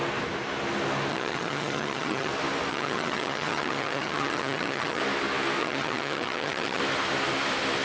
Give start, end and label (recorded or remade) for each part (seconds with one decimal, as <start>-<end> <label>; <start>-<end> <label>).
0.0-1.1 recorded; 1.1-2.3 remade; 2.3-2.7 recorded; 2.7-5.0 remade; 5.0-5.6 recorded; 5.6-6.8 remade; 6.8-7.8 recorded